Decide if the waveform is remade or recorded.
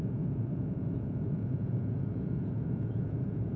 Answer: remade